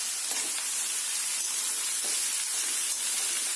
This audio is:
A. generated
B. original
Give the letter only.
B